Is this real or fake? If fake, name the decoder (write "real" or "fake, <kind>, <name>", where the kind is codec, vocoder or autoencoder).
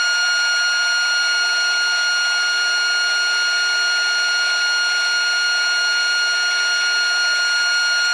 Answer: real